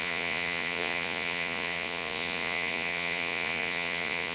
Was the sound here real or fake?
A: fake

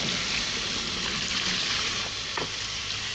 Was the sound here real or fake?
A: real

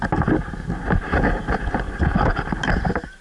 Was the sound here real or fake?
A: real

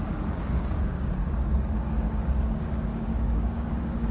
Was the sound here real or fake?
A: fake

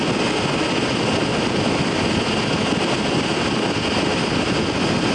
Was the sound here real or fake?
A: real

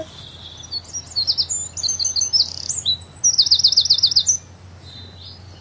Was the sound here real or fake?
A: real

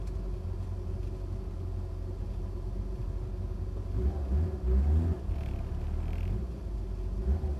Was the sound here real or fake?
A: real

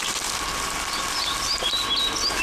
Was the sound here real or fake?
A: real